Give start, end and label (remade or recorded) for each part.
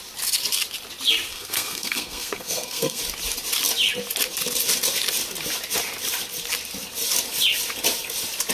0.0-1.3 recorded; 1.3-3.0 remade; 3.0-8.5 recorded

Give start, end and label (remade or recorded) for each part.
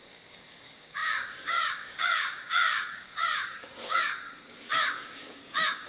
0.0-5.9 remade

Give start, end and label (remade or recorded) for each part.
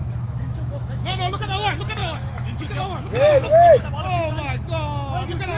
0.0-1.4 remade; 1.4-2.0 recorded; 2.0-3.9 remade; 3.9-5.6 recorded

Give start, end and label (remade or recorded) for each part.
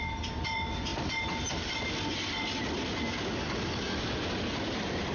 0.0-5.1 recorded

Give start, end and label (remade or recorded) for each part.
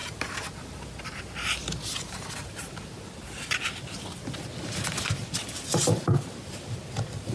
0.0-1.2 remade; 1.2-7.3 recorded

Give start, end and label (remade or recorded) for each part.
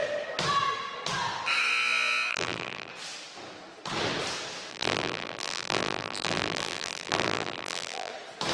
0.0-2.3 recorded; 2.3-2.9 remade; 2.9-4.7 recorded; 4.7-8.1 remade; 8.1-8.5 recorded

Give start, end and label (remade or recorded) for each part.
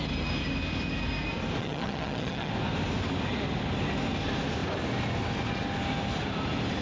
0.0-1.6 recorded; 1.6-2.5 remade; 2.5-6.8 recorded